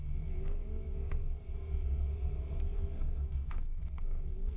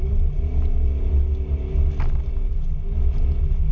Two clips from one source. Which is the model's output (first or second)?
first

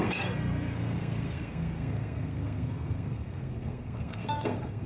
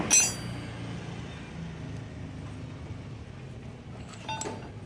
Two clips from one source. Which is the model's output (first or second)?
first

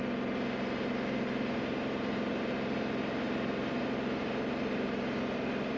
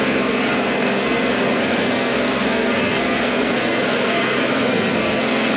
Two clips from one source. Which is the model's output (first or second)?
second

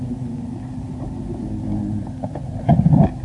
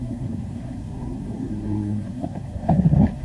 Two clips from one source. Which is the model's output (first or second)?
second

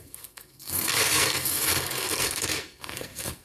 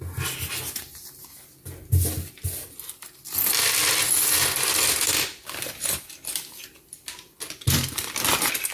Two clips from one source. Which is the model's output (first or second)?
first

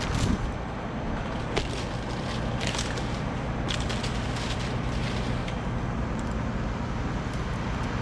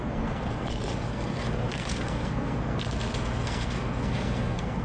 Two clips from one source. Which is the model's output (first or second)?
second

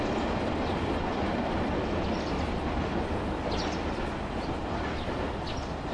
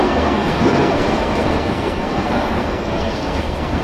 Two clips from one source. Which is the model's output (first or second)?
second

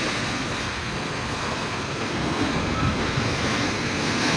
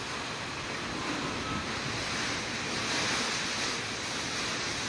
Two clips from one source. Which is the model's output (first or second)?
first